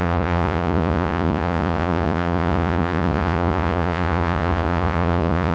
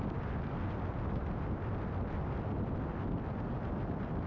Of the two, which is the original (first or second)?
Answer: second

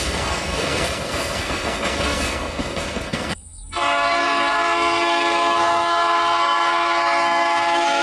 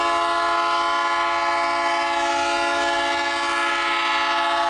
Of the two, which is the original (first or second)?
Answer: second